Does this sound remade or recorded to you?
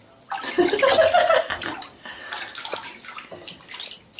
recorded